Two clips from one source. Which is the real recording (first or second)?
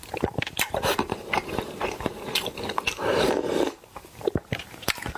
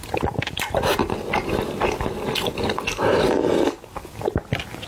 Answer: second